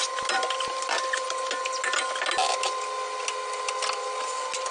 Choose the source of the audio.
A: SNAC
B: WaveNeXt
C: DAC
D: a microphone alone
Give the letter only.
D